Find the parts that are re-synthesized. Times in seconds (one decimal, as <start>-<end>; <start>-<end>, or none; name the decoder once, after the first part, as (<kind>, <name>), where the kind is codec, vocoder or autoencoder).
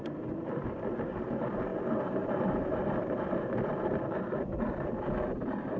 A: 1.7-5.0 (vocoder, BigVGAN v2)